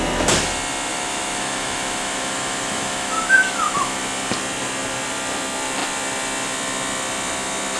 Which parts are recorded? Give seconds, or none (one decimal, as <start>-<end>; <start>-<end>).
0.0-0.9; 4.0-7.8